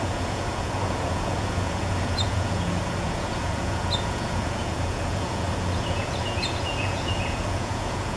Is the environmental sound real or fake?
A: fake